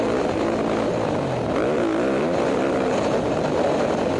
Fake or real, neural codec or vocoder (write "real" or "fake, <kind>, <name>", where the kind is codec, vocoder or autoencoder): real